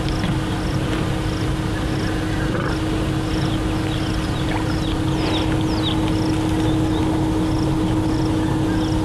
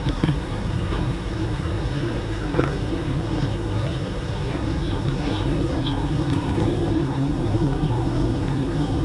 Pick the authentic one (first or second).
first